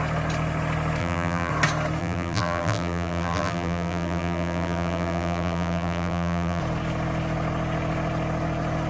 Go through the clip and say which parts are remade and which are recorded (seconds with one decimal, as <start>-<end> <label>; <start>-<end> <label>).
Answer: 0.0-1.0 recorded; 1.0-1.5 remade; 1.5-2.0 recorded; 2.0-6.6 remade; 6.6-8.9 recorded